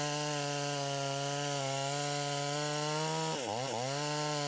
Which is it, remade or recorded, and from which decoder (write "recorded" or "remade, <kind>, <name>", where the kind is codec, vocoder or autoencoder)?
recorded